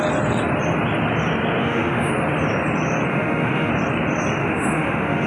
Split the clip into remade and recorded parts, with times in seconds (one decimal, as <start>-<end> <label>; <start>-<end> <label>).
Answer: 0.0-1.6 recorded; 1.6-2.1 remade; 2.1-3.1 recorded; 3.1-3.7 remade; 3.7-4.4 recorded; 4.4-5.3 remade

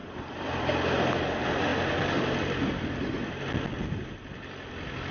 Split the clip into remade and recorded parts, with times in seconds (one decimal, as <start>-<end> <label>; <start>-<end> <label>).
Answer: 0.0-5.1 recorded

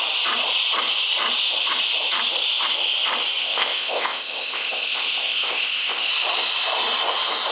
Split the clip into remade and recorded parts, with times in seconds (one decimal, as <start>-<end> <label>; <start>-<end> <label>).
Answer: 0.0-3.4 recorded; 3.4-6.1 remade; 6.1-7.5 recorded

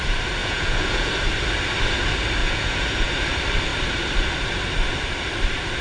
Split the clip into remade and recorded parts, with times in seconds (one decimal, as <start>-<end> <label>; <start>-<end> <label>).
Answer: 0.0-0.4 recorded; 0.4-1.1 remade; 1.1-2.4 recorded; 2.4-3.1 remade; 3.1-5.8 recorded

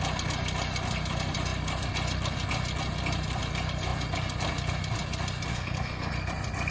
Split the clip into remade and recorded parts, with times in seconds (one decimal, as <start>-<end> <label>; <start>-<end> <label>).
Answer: 0.0-5.5 recorded; 5.5-6.1 remade; 6.1-6.7 recorded

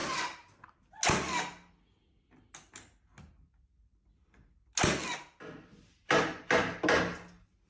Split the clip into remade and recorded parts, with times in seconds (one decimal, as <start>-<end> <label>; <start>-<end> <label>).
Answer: 0.0-7.7 recorded